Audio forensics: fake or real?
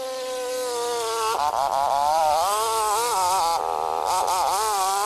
real